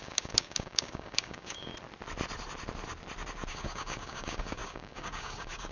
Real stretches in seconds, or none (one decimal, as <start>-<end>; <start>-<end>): 1.7-3.5